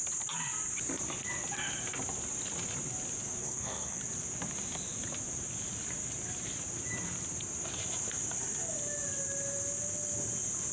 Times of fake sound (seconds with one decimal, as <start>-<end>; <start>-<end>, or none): 3.4-4.0